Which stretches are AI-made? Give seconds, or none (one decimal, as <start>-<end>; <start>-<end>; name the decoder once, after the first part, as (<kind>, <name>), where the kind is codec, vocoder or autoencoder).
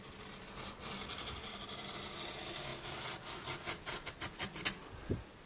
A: none